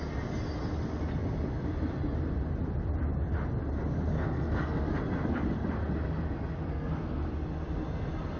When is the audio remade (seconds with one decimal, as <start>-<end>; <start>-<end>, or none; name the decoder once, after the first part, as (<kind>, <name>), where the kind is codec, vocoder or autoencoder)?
4.1-4.9 (codec, SNAC); 6.7-7.3